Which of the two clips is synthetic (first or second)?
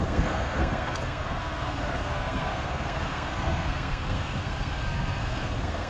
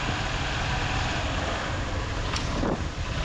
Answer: first